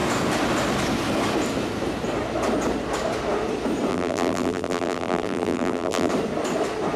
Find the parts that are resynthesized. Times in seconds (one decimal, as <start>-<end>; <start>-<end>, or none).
3.9-6.1